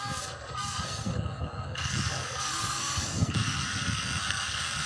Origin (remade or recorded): remade